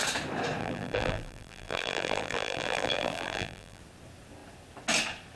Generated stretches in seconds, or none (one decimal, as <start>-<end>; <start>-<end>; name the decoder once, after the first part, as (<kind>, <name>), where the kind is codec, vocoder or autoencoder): 0.6-3.8 (vocoder, BigVGAN v2)